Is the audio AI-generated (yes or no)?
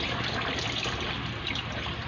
no